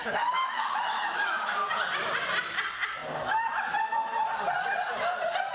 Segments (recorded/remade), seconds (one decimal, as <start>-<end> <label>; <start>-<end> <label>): 0.0-1.7 remade; 1.7-5.5 recorded